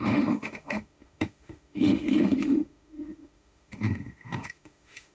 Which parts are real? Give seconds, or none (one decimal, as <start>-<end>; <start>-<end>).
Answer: none